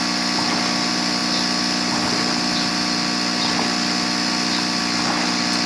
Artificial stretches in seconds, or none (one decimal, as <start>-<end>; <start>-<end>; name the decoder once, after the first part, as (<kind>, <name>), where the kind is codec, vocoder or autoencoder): none